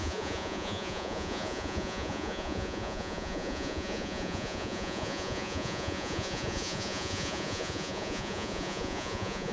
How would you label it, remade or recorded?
remade